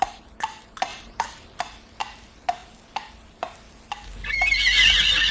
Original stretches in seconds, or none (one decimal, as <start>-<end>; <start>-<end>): 0.0-0.9; 1.6-5.3